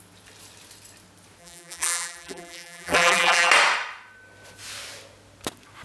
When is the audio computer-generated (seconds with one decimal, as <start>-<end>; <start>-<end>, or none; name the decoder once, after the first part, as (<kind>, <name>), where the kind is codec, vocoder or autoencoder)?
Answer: 1.4-3.5 (vocoder, BigVGAN v2)